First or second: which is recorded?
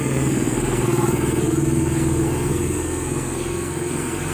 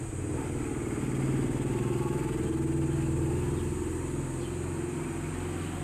second